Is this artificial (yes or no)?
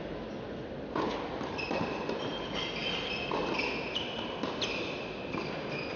no